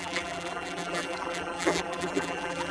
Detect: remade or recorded remade